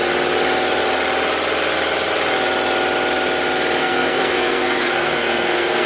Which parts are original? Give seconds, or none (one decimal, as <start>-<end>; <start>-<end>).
0.0-3.8